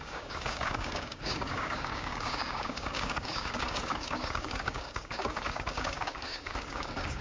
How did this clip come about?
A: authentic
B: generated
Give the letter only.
B